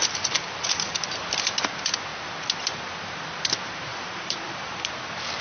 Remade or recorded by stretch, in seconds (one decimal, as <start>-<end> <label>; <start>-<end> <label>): 0.0-1.2 remade; 1.2-3.9 recorded; 3.9-4.8 remade; 4.8-5.4 recorded

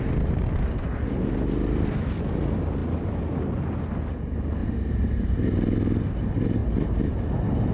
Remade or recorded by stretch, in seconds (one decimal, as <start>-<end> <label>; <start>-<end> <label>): 0.0-4.6 recorded; 4.6-5.2 remade; 5.2-6.6 recorded; 6.6-7.3 remade; 7.3-7.7 recorded

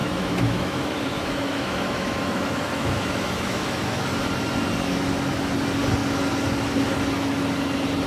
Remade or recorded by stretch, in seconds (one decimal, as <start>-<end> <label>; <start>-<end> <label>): 0.0-4.1 remade; 4.1-8.1 recorded

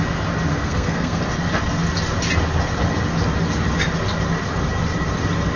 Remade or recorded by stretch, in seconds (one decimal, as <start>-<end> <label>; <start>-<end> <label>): 0.0-0.5 recorded; 0.5-1.2 remade; 1.2-5.6 recorded